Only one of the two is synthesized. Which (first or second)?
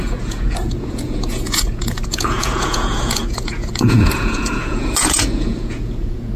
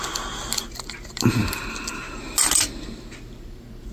first